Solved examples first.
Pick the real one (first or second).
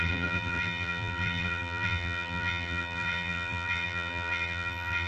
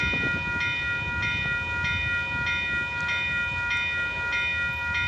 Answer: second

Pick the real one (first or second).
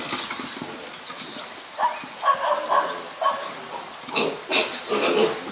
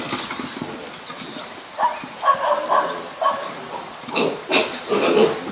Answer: first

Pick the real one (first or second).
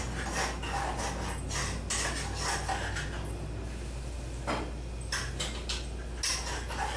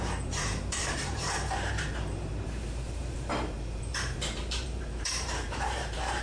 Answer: first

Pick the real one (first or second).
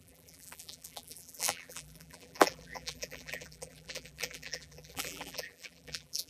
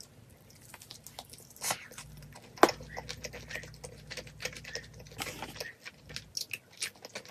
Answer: second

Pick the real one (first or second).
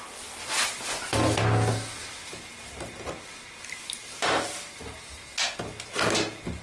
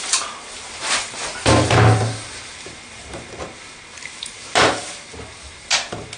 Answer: first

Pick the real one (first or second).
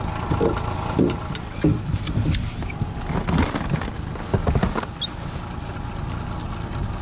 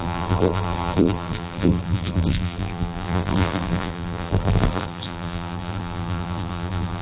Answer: first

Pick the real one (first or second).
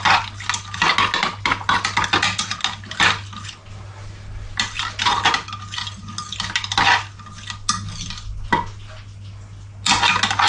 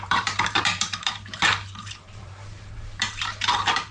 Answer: first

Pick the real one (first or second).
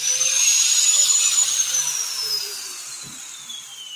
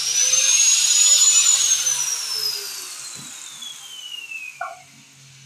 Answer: second